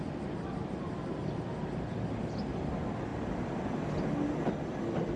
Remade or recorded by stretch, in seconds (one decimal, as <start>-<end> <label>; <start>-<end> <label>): 0.0-5.2 recorded